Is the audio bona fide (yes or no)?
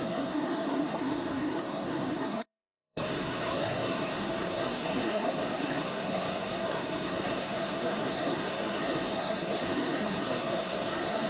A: no